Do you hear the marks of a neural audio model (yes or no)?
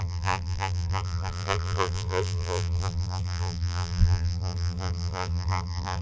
yes